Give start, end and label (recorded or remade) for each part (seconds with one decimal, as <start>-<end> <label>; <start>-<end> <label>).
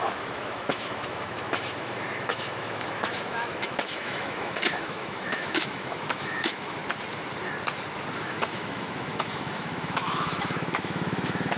0.0-6.8 remade; 6.8-8.1 recorded; 8.1-11.6 remade